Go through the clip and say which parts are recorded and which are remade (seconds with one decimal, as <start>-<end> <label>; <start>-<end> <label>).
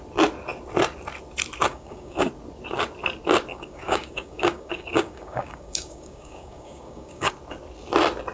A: 0.0-1.7 recorded; 1.7-2.3 remade; 2.3-3.5 recorded; 3.5-7.3 remade; 7.3-8.3 recorded